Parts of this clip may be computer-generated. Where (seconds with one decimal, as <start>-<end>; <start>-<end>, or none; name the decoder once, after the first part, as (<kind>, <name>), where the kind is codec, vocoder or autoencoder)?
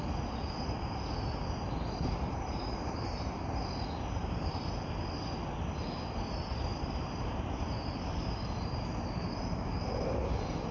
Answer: 2.3-3.4 (vocoder, BigVGAN v2); 4.2-4.7; 6.7-8.4